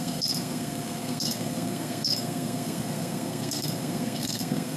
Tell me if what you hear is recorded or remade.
remade